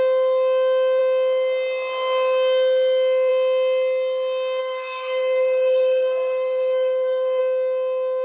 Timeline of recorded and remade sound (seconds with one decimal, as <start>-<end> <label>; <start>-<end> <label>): 0.0-4.6 recorded; 4.6-7.4 remade; 7.4-8.2 recorded